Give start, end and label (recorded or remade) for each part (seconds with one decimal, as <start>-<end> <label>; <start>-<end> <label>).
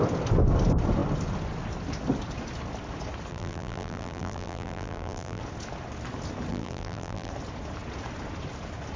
0.0-3.3 recorded; 3.3-5.4 remade; 5.4-6.5 recorded; 6.5-7.3 remade; 7.3-9.0 recorded